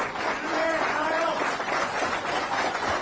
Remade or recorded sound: remade